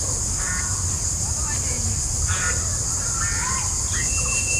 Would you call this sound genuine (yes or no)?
yes